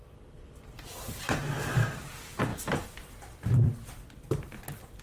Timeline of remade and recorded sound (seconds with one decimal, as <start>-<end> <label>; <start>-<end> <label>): 0.0-5.0 remade